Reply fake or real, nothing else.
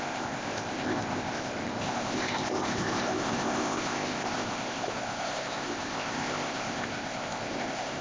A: fake